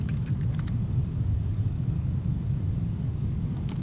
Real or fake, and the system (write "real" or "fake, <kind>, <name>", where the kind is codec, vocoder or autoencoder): fake, codec, DAC